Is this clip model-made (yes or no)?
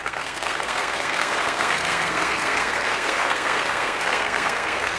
yes